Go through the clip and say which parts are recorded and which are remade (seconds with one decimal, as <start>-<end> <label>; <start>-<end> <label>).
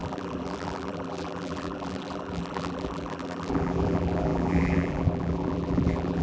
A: 0.0-6.2 remade